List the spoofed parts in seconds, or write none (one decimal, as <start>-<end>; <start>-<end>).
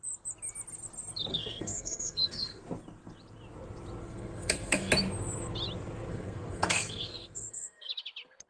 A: 1.3-2.6; 4.0-4.9; 6.1-7.9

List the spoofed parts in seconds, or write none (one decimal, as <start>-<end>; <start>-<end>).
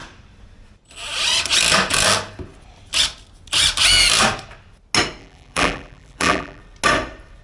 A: 5.2-6.6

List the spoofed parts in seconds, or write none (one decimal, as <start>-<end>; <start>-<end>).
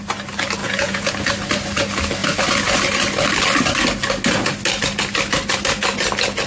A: 0.6-1.1